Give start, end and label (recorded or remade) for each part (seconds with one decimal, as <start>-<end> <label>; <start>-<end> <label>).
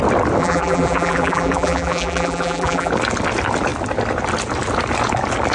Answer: 0.0-0.4 recorded; 0.4-2.9 remade; 2.9-5.5 recorded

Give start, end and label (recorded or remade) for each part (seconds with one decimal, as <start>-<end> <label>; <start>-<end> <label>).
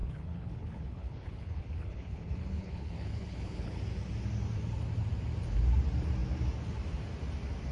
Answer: 0.0-3.8 remade; 3.8-7.7 recorded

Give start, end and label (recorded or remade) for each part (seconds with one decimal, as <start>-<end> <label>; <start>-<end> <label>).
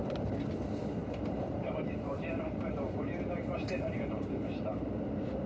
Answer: 0.0-1.0 recorded; 1.0-4.3 remade; 4.3-5.5 recorded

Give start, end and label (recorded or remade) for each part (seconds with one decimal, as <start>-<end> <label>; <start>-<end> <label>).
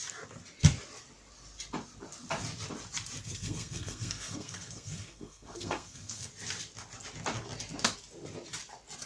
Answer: 0.0-3.2 recorded; 3.2-6.3 remade; 6.3-9.1 recorded